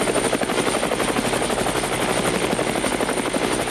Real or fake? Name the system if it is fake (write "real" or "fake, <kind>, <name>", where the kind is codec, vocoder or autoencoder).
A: real